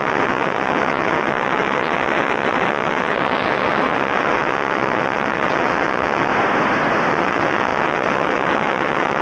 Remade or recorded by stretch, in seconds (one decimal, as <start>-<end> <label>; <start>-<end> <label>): 0.0-6.3 remade; 6.3-7.1 recorded; 7.1-9.2 remade